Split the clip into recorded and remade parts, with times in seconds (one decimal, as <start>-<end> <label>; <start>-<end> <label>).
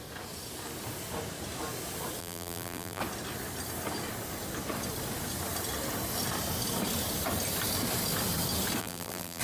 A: 0.0-2.2 recorded; 2.2-3.0 remade; 3.0-8.8 recorded; 8.8-9.4 remade